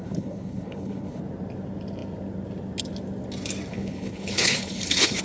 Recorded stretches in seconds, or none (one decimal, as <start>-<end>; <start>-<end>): 1.2-3.7